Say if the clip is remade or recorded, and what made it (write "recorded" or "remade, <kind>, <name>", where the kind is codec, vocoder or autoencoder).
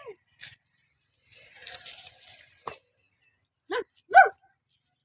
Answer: recorded